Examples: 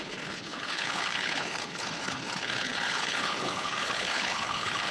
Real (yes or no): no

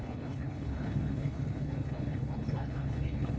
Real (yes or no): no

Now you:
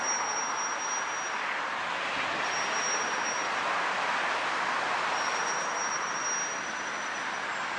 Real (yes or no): yes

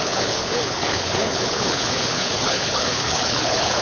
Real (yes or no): no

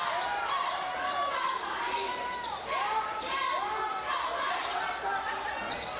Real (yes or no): yes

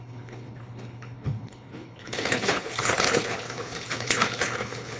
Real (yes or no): no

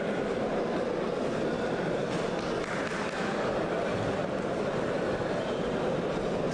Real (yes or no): yes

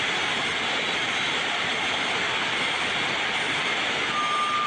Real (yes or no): yes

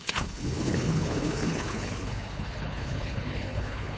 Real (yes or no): no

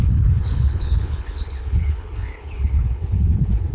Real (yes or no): no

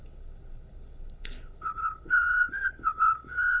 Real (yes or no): no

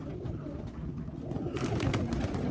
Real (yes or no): yes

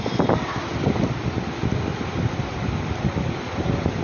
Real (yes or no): yes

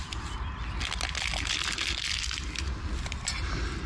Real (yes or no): yes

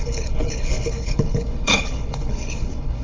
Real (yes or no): no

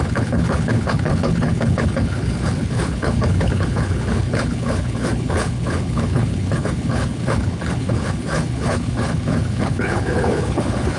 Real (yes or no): no